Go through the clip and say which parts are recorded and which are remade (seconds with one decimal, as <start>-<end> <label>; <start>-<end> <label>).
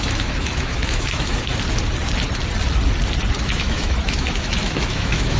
0.0-1.5 remade; 1.5-3.4 recorded; 3.4-5.4 remade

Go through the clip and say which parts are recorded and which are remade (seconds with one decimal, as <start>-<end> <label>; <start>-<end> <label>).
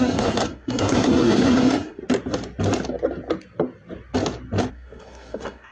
0.0-2.0 remade; 2.0-4.7 recorded; 4.7-5.7 remade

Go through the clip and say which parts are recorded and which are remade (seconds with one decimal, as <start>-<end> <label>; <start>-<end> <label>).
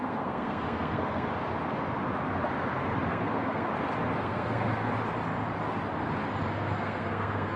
0.0-1.3 remade; 1.3-3.1 recorded; 3.1-3.7 remade; 3.7-4.2 recorded; 4.2-4.9 remade; 4.9-6.5 recorded; 6.5-7.6 remade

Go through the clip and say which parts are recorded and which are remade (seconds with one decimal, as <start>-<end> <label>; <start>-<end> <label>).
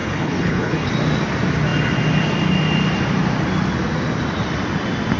0.0-0.9 remade; 0.9-5.2 recorded